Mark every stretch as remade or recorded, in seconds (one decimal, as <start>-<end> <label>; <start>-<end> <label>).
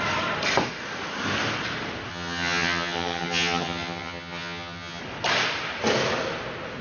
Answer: 0.0-2.1 recorded; 2.1-5.0 remade; 5.0-6.8 recorded